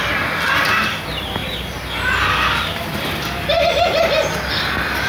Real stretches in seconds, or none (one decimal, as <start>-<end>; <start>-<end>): 0.0-5.1